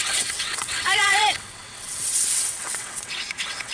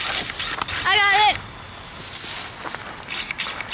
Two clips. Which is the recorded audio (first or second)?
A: second